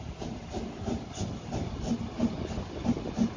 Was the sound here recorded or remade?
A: recorded